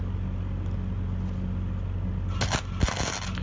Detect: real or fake real